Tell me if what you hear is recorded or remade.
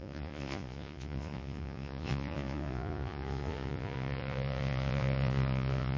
remade